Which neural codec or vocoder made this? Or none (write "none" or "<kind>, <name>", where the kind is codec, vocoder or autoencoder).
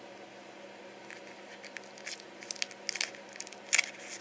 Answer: none